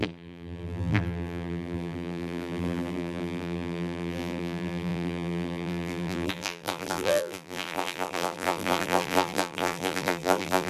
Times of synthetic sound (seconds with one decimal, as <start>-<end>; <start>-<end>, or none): 0.0-10.7